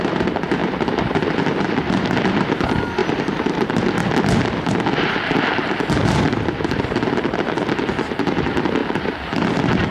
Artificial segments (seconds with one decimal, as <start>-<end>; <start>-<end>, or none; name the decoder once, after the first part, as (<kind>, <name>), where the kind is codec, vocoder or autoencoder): 0.6-1.9 (vocoder, BigVGAN v2); 8.8-9.9